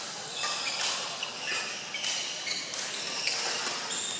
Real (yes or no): yes